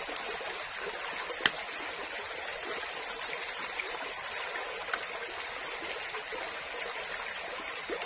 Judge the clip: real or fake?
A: real